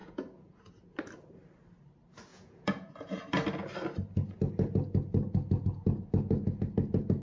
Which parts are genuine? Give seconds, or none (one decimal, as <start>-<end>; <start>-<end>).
0.7-2.3; 3.2-7.2